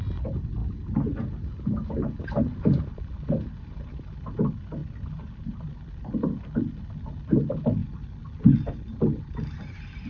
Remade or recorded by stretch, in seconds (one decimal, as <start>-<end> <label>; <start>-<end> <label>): 0.0-10.1 recorded